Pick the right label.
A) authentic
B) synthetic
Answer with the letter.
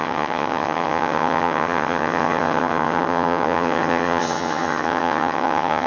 B